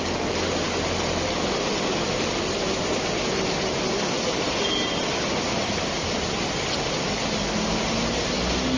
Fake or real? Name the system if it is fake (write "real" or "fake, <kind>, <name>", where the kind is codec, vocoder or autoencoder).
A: real